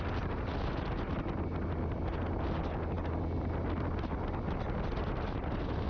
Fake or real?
real